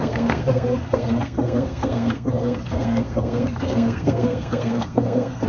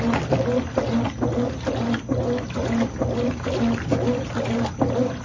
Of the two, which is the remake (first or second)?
first